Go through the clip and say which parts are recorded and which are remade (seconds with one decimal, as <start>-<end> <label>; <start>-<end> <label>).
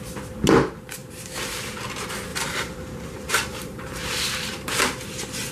0.0-1.0 recorded; 1.0-1.8 remade; 1.8-2.3 recorded; 2.3-4.8 remade; 4.8-5.5 recorded